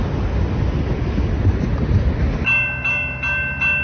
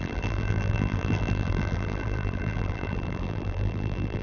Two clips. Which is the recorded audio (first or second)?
first